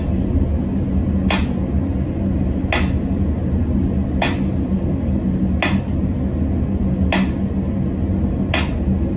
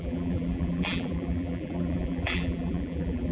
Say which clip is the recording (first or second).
first